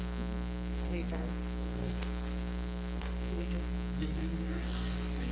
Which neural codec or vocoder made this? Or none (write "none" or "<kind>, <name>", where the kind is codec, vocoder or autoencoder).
codec, SNAC